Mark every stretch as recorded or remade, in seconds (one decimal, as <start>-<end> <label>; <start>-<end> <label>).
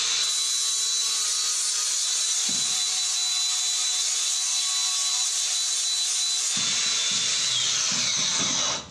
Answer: 0.0-1.0 recorded; 1.0-2.5 remade; 2.5-8.9 recorded